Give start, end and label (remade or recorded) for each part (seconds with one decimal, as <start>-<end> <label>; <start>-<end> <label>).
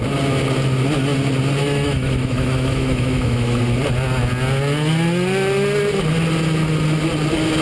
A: 0.0-1.6 recorded; 1.6-3.6 remade; 3.6-7.6 recorded